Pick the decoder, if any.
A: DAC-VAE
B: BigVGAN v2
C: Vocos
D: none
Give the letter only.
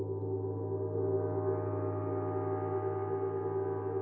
D